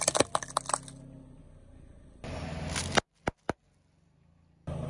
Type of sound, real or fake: real